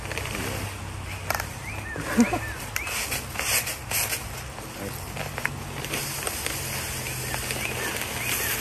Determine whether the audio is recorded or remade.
recorded